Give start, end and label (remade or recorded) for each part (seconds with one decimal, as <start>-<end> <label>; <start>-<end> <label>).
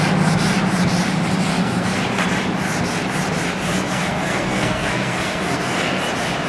0.0-1.5 recorded; 1.5-2.0 remade; 2.0-3.7 recorded; 3.7-6.0 remade; 6.0-6.5 recorded